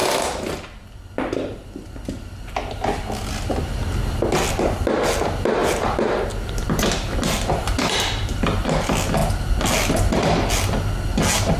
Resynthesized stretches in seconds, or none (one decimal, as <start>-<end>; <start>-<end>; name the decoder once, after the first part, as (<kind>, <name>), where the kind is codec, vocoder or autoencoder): 5.6-8.4 (vocoder, BigVGAN v2)